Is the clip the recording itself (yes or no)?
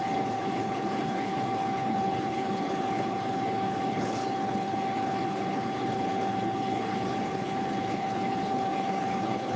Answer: no